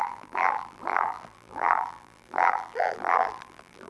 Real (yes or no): no